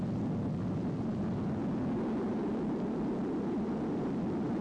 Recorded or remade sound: recorded